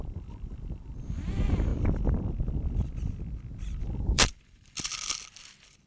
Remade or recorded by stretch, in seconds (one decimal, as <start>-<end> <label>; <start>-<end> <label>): 0.0-1.7 remade; 1.7-3.8 recorded; 3.8-4.9 remade; 4.9-5.9 recorded